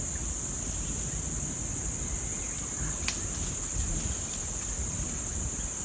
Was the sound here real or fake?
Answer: real